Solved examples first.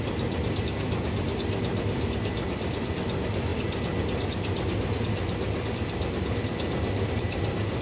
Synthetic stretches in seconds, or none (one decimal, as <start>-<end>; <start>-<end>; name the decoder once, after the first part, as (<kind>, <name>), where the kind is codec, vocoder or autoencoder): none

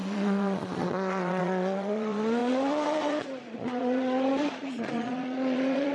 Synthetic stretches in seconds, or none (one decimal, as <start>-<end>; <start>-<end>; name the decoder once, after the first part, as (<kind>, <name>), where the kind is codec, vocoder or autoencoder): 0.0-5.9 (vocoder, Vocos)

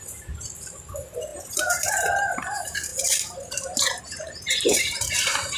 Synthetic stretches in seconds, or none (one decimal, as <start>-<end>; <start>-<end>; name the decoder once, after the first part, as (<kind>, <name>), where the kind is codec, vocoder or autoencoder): 0.0-5.6 (vocoder, BigVGAN v2)

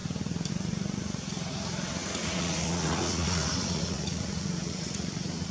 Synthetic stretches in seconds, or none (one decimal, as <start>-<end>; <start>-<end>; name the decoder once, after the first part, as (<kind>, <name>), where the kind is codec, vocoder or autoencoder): 0.5-5.5 (vocoder, Vocos)

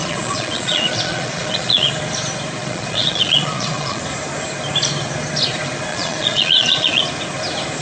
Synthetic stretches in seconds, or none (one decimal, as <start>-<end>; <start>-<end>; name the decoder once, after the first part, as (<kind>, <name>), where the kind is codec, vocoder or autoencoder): 0.0-1.9 (vocoder, Vocos); 2.6-4.0; 5.9-7.0

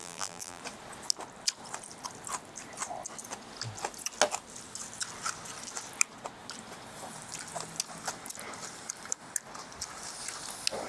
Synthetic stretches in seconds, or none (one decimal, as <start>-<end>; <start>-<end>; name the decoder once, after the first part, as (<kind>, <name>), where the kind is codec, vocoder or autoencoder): 0.0-0.6 (vocoder, BigVGAN v2)

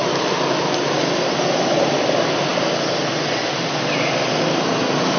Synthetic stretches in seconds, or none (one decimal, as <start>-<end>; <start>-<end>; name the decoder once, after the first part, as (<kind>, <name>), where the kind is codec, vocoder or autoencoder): none